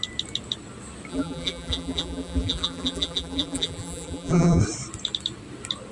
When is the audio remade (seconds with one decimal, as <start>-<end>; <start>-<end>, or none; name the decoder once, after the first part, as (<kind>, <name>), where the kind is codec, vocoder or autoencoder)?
1.1-4.6 (vocoder, BigVGAN v2)